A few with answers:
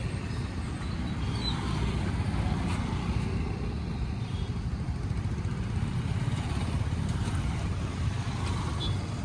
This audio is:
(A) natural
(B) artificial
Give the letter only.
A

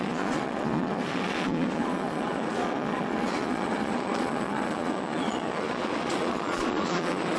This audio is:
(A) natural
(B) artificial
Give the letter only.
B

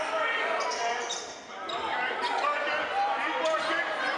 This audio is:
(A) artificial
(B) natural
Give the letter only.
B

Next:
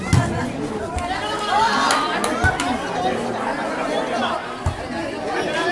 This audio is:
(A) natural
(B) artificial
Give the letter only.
A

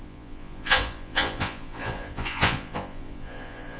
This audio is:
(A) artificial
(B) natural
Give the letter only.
A